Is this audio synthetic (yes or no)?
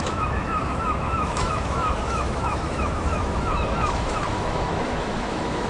yes